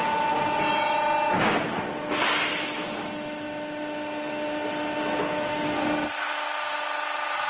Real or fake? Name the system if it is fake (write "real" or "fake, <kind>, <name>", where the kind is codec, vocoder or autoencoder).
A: real